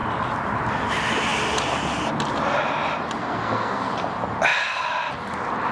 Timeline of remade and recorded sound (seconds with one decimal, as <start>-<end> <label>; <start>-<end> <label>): 0.0-3.2 recorded; 3.2-3.9 remade; 3.9-5.7 recorded